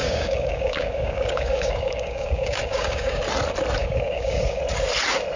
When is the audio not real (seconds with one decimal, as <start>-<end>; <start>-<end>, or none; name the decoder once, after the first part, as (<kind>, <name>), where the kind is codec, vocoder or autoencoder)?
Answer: 0.0-3.2 (codec, DAC); 3.8-4.6

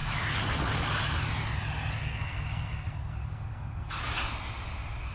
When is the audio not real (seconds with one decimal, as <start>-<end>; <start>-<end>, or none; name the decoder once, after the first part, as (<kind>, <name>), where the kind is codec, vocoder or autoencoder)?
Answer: 2.0-4.0 (codec, SNAC)

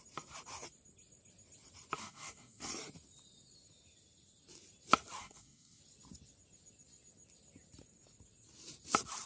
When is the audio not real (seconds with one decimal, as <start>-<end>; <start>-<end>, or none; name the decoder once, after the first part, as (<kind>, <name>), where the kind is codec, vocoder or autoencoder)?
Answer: 2.0-2.7 (codec, DAC); 5.2-5.8

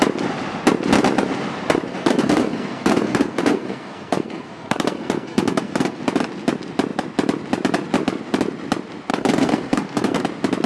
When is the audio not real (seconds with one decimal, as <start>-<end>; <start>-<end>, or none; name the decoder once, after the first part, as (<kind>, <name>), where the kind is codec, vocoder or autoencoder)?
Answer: 1.9-6.0 (codec, SNAC); 9.1-10.2

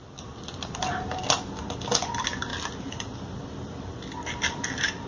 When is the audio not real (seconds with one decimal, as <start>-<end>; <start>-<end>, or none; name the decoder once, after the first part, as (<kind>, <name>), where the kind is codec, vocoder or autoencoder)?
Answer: 2.5-4.2 (vocoder, BigVGAN v2)

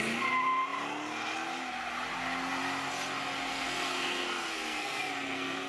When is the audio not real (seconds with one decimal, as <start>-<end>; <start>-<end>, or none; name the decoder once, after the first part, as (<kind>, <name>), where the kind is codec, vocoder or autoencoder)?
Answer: 3.5-5.7 (codec, SNAC)